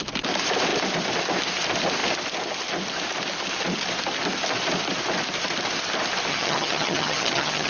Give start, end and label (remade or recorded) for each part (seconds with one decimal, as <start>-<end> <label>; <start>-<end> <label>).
0.0-6.3 recorded; 6.3-7.7 remade